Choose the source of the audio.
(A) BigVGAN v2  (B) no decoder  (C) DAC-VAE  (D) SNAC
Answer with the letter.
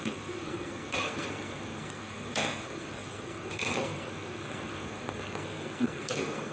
D